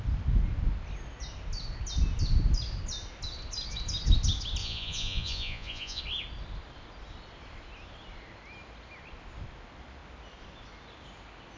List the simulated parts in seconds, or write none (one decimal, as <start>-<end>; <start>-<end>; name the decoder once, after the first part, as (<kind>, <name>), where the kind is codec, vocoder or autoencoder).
4.6-6.0 (vocoder, Vocos)